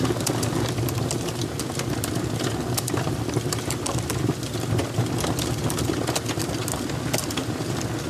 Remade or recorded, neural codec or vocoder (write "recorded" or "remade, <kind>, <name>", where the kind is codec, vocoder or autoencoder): recorded